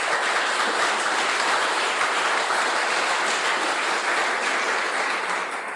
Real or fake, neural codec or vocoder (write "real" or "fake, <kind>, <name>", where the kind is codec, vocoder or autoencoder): real